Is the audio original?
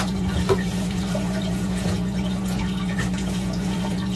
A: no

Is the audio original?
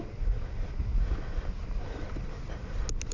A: yes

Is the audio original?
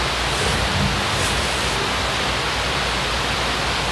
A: yes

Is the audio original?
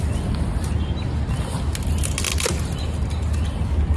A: yes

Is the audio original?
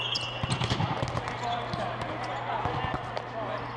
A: yes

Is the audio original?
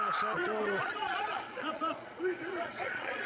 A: no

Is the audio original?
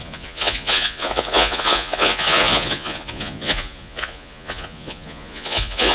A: no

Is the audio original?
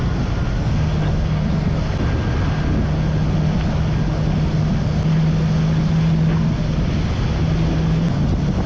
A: yes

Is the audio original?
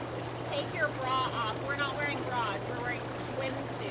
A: yes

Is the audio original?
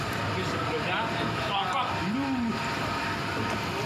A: yes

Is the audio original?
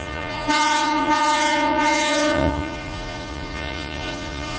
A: no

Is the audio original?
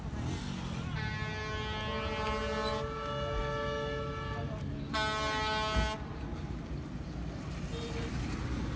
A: yes